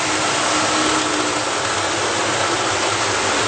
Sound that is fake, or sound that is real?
real